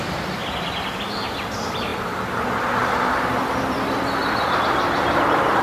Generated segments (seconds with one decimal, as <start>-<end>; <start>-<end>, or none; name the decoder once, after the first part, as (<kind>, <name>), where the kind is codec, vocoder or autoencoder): 0.4-1.0 (vocoder, BigVGAN v2)